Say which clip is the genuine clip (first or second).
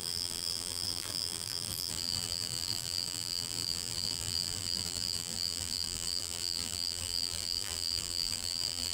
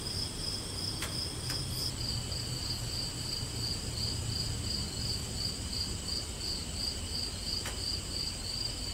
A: second